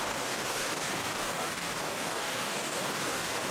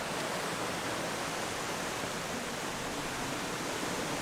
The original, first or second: second